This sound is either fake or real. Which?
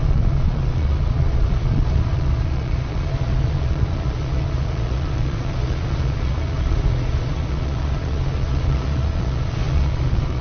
fake